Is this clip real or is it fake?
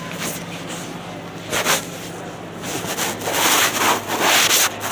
real